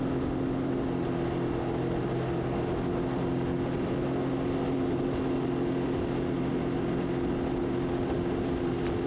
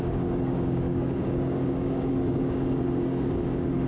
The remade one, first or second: second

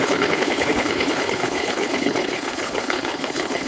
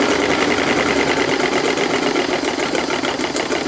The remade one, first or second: first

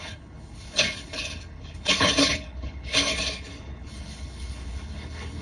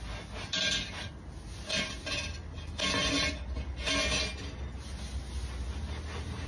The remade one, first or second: first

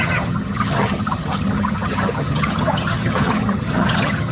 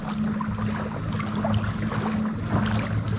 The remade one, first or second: first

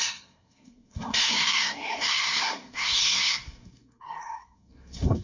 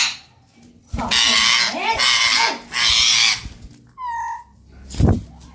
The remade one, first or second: first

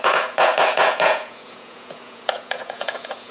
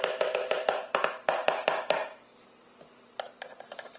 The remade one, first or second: first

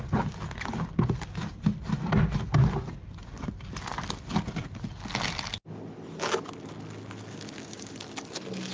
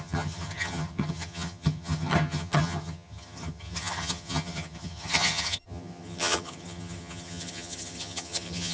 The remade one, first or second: second